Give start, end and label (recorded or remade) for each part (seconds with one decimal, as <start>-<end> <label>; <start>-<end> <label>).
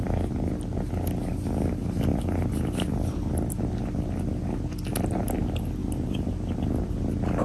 0.0-2.1 recorded; 2.1-3.6 remade; 3.6-5.8 recorded; 5.8-6.3 remade; 6.3-7.4 recorded